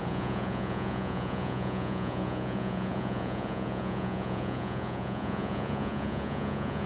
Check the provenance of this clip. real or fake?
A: fake